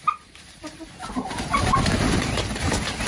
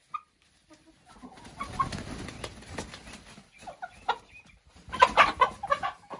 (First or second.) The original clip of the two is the second